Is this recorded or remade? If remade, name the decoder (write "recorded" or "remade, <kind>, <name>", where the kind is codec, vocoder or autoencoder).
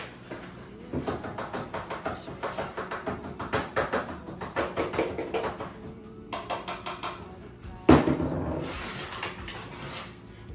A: recorded